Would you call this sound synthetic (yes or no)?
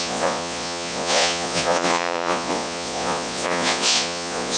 yes